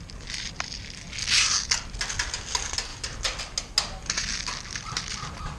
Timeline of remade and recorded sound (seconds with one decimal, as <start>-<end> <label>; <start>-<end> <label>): 0.0-5.6 recorded